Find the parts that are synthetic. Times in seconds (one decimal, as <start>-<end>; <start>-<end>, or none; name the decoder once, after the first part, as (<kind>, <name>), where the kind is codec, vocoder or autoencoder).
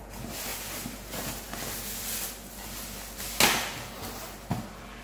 none